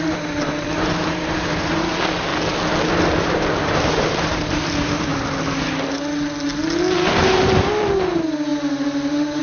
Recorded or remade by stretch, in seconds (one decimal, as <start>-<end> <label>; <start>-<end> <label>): 0.0-2.3 remade; 2.3-3.0 recorded; 3.0-5.1 remade; 5.1-6.8 recorded; 6.8-9.4 remade